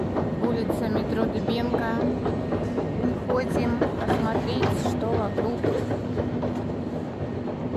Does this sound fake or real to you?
real